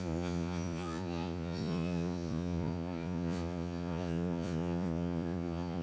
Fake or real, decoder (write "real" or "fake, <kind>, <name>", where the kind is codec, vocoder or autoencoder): fake, vocoder, Vocos